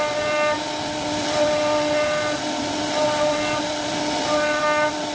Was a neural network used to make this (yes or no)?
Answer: no